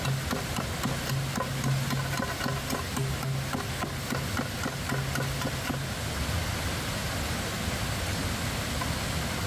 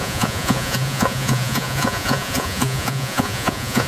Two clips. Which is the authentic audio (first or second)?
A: first